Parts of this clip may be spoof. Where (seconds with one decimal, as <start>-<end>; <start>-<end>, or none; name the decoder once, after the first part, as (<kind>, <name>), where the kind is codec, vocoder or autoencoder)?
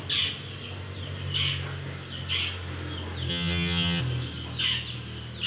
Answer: 3.3-4.0 (vocoder, HiFi-GAN)